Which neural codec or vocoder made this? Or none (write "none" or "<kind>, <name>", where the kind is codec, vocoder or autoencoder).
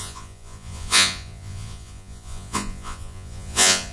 vocoder, Vocos